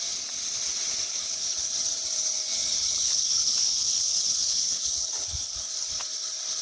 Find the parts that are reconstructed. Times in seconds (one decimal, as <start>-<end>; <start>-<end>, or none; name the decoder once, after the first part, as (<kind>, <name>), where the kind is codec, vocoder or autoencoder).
1.1-1.7 (codec, HILCodec); 2.5-5.7